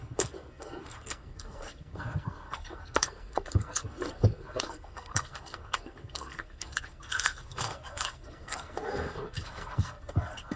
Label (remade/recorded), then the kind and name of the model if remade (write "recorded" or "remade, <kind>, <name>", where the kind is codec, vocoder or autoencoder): remade, codec, SNAC